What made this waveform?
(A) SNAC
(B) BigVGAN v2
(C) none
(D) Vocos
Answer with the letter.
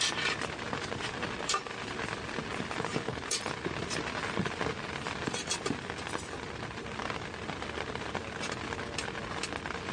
C